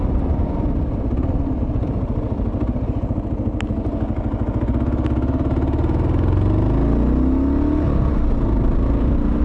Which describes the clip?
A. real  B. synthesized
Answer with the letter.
A